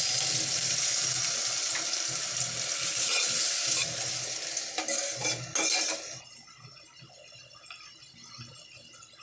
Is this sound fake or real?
real